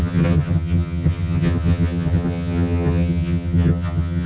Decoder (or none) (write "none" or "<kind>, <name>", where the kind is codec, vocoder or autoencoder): vocoder, HiFi-GAN